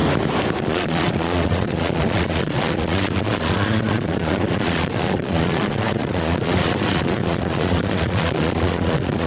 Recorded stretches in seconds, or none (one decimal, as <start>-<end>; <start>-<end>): 0.0-0.6